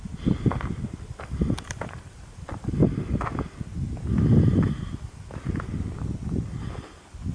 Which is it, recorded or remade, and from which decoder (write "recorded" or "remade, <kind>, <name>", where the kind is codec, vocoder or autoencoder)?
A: recorded